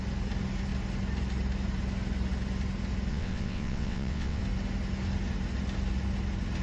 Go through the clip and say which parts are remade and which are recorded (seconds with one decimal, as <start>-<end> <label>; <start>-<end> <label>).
0.0-3.1 recorded; 3.1-4.4 remade; 4.4-6.6 recorded